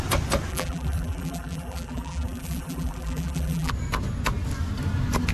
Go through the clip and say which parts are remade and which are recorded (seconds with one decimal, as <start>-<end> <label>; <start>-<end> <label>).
0.0-0.5 recorded; 0.5-3.7 remade; 3.7-5.3 recorded